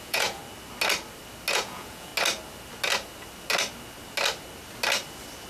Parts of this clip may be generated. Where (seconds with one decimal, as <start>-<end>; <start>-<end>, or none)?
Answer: 0.0-0.4; 1.5-2.1